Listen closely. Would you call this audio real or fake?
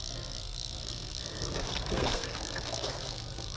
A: fake